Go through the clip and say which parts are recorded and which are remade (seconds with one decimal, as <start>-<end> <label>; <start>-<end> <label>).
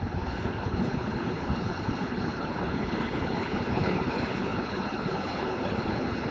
0.0-6.3 remade